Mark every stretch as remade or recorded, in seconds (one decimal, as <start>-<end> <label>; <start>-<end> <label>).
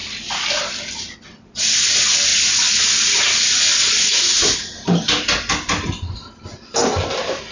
0.0-7.5 recorded